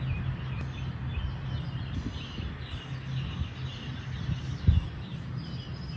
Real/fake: real